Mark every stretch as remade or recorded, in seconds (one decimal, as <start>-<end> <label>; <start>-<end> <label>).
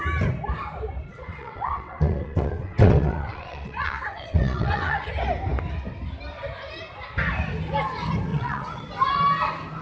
0.0-1.1 recorded; 1.1-5.1 remade; 5.1-8.3 recorded; 8.3-8.8 remade; 8.8-9.8 recorded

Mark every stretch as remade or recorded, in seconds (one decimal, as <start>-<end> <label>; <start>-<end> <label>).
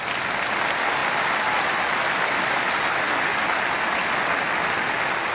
0.0-1.0 recorded; 1.0-1.8 remade; 1.8-5.3 recorded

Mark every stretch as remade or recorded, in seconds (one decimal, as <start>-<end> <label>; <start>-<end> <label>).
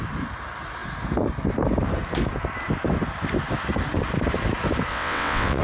0.0-4.9 recorded; 4.9-5.6 remade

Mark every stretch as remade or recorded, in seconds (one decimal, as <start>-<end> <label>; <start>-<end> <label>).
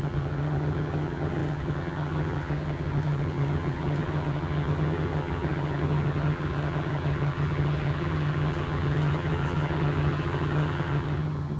0.0-11.6 remade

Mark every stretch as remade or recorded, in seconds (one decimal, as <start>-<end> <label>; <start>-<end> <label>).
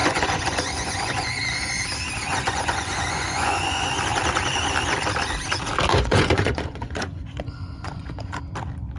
0.0-1.8 remade; 1.8-2.3 recorded; 2.3-3.9 remade; 3.9-5.9 recorded; 5.9-8.4 remade; 8.4-9.0 recorded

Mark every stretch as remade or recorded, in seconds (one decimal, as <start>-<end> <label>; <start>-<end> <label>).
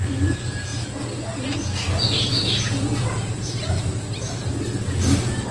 0.0-5.5 recorded